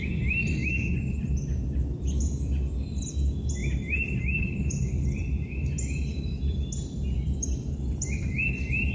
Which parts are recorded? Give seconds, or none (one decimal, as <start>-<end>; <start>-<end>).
1.5-2.2; 3.6-4.3